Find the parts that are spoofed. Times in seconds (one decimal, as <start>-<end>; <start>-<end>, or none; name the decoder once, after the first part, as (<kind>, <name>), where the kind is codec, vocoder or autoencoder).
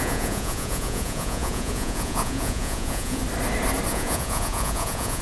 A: 0.0-3.2 (vocoder, Vocos); 3.9-5.2